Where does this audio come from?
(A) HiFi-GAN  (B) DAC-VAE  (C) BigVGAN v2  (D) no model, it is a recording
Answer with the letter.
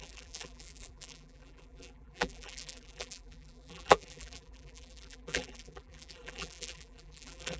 C